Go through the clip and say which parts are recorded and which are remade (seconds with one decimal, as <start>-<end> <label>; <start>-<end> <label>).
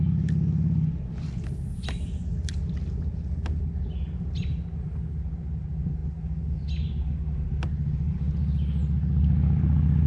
0.0-10.1 recorded